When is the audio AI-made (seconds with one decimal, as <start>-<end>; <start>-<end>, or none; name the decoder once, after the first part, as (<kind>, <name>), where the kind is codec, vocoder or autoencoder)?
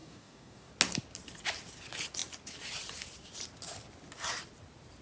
0.0-0.7 (codec, DAC)